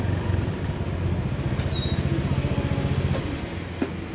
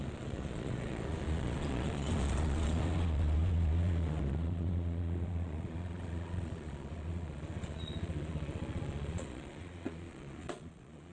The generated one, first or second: second